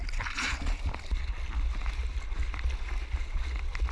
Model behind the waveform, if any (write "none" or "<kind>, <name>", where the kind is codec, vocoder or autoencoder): none